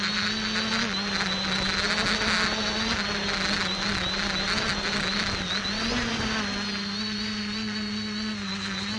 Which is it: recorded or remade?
recorded